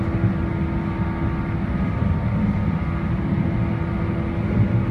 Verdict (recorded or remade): recorded